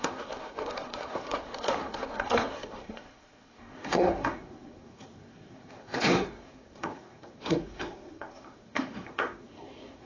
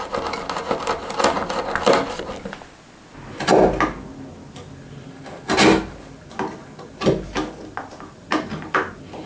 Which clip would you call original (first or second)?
second